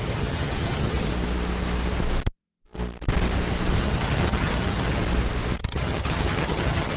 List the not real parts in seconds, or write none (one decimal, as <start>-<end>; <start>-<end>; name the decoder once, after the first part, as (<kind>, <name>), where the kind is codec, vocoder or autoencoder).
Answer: 0.0-1.1 (vocoder, HiFi-GAN); 3.8-5.0; 5.6-7.0